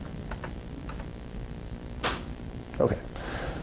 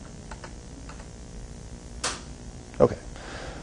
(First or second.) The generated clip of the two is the first